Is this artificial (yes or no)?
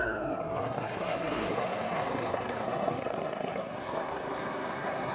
yes